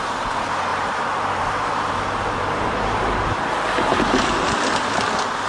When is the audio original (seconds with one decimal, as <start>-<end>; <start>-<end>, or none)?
0.0-0.7; 3.2-5.5